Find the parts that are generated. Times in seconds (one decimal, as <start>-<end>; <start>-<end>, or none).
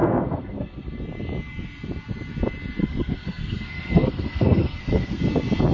0.0-0.9; 2.8-5.2